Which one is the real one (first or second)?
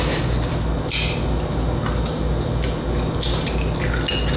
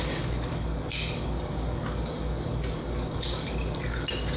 first